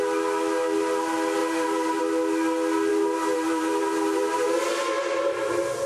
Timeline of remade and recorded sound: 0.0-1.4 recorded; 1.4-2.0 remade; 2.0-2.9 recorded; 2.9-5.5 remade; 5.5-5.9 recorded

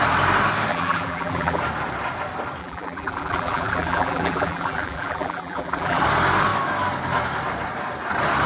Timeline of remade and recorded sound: 0.0-0.7 recorded; 0.7-1.6 remade; 1.6-2.6 recorded; 2.6-6.0 remade; 6.0-8.5 recorded

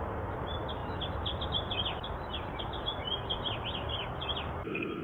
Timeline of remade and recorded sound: 0.0-0.8 recorded; 0.8-2.6 remade; 2.6-5.0 recorded

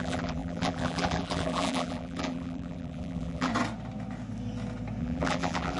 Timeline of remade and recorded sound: 0.0-3.5 remade; 3.5-5.0 recorded; 5.0-5.8 remade

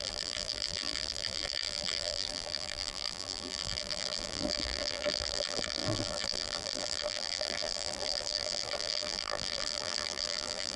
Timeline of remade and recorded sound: 0.0-10.8 remade

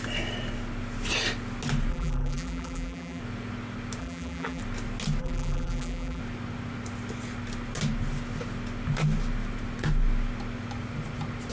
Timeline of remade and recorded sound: 0.0-1.9 recorded; 1.9-3.2 remade; 3.2-4.0 recorded; 4.0-4.6 remade; 4.6-5.2 recorded; 5.2-6.2 remade; 6.2-11.5 recorded

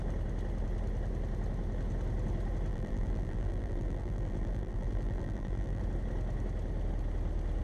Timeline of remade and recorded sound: 0.0-2.7 recorded; 2.7-5.8 remade; 5.8-7.6 recorded

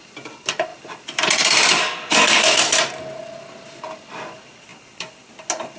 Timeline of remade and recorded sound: 0.0-0.7 recorded; 0.7-2.9 remade; 2.9-5.8 recorded